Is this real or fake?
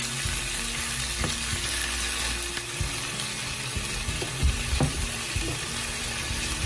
real